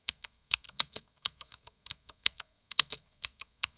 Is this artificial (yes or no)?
yes